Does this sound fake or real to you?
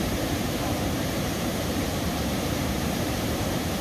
fake